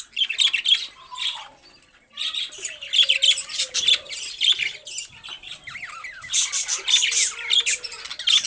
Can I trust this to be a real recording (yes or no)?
yes